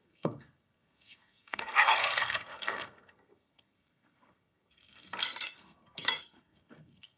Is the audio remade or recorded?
remade